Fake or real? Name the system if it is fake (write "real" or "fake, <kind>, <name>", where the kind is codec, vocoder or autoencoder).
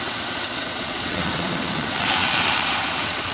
fake, vocoder, WaveNeXt